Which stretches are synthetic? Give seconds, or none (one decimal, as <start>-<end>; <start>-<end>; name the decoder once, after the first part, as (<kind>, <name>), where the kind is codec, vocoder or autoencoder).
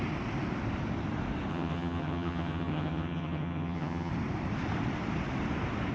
1.5-4.1 (vocoder, HiFi-GAN)